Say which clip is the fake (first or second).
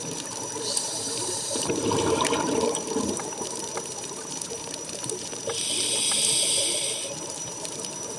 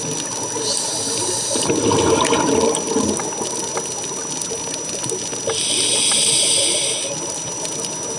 first